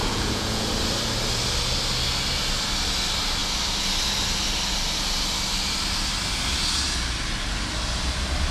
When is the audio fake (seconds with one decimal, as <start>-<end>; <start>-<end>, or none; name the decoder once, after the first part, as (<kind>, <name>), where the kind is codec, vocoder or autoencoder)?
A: 0.0-0.7 (vocoder, Vocos)